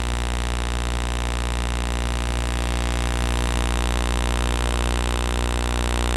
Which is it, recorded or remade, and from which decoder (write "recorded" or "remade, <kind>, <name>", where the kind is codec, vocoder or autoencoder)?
recorded